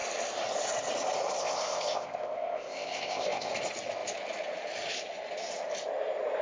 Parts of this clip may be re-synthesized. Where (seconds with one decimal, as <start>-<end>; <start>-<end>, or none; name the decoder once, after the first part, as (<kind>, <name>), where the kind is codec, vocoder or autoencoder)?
1.4-3.5 (codec, ZipCodec)